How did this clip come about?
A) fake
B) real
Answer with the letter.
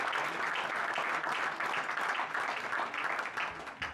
B